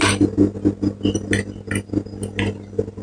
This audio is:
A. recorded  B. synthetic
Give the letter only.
A